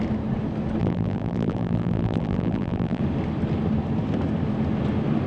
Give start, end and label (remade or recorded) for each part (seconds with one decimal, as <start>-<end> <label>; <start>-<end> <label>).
0.0-0.8 recorded; 0.8-3.0 remade; 3.0-5.3 recorded